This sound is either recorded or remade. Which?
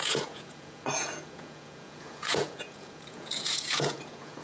remade